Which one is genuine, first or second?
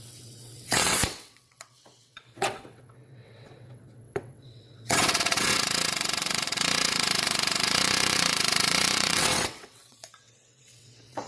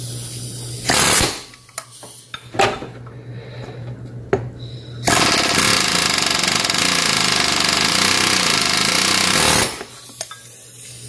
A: second